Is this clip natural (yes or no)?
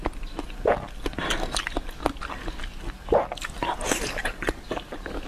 yes